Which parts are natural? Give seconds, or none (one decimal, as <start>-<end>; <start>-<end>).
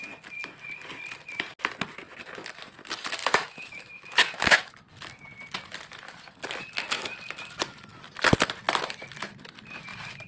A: 0.0-3.2; 4.6-10.3